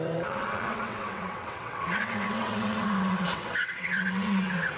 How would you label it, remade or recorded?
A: remade